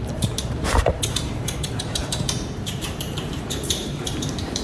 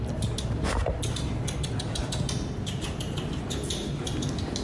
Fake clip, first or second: first